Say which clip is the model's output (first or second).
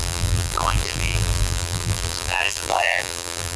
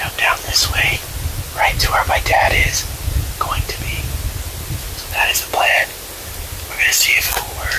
first